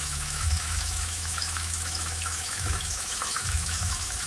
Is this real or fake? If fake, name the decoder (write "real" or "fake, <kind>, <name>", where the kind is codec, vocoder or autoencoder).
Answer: fake, autoencoder, DAC-VAE